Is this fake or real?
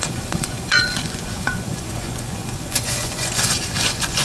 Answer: fake